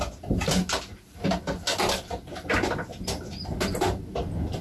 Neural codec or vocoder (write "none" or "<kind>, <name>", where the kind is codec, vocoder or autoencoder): none